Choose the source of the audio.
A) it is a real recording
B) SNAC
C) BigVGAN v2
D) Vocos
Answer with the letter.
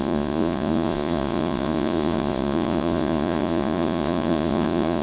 D